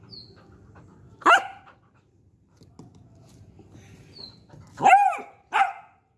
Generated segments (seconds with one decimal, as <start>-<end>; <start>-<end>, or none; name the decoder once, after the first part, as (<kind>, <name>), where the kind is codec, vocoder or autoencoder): none